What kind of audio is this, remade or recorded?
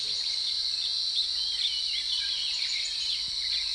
recorded